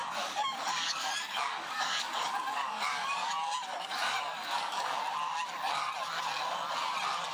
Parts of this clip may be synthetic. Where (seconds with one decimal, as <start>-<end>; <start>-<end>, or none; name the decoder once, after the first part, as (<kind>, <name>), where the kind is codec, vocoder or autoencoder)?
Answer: 0.0-3.3 (codec, DAC); 3.7-5.0